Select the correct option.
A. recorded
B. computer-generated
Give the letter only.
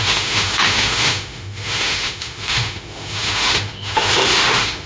B